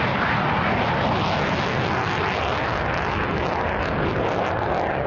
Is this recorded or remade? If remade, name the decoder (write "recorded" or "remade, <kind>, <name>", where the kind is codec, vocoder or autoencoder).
recorded